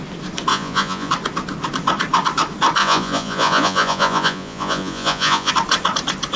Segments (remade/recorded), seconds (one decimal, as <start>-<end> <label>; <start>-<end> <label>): 0.0-0.5 recorded; 0.5-1.1 remade; 1.1-2.8 recorded; 2.8-5.5 remade; 5.5-6.4 recorded